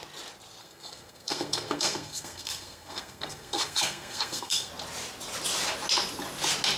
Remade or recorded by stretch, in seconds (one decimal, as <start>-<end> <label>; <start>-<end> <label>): 0.0-0.6 recorded; 0.6-4.7 remade; 4.7-6.8 recorded